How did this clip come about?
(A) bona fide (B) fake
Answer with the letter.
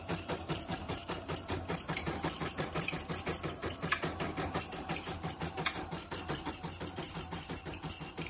B